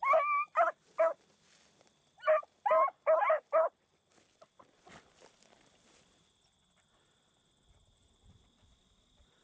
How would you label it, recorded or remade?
recorded